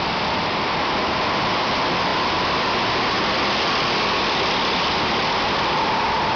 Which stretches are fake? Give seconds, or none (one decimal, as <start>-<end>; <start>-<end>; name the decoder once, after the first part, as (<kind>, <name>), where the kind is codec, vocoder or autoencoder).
none